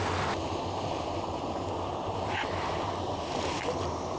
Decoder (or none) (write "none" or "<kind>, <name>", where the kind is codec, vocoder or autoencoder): none